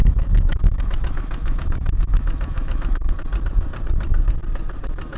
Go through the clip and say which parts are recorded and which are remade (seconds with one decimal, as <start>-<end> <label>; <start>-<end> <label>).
0.0-3.1 remade; 3.1-5.2 recorded